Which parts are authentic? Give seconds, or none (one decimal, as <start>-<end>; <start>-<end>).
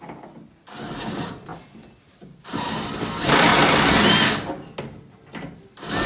0.0-6.1